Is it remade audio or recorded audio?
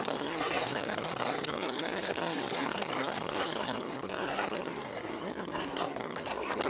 remade